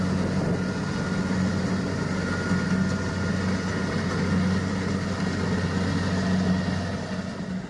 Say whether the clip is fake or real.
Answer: real